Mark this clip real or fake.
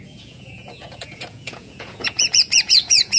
fake